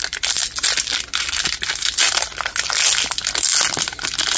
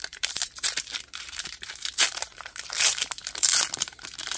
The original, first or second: first